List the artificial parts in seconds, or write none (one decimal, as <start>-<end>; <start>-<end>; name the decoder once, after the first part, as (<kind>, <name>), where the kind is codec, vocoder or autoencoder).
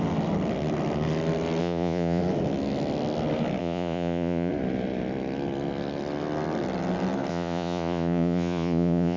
1.6-2.2 (vocoder, Vocos); 3.6-4.5; 7.3-9.2